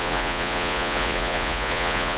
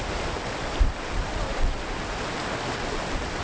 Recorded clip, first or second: second